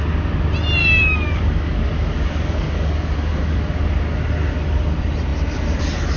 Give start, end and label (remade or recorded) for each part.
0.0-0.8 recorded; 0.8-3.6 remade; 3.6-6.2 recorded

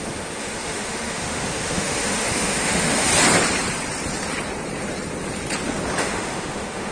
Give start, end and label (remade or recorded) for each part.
0.0-3.1 remade; 3.1-6.0 recorded; 6.0-6.9 remade

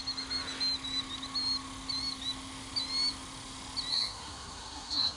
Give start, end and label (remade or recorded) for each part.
0.0-3.9 recorded; 3.9-5.2 remade

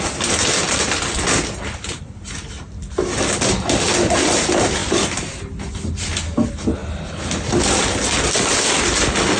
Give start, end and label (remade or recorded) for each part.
0.0-9.4 recorded